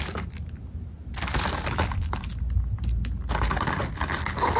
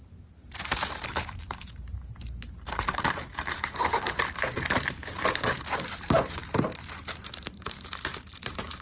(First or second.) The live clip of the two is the first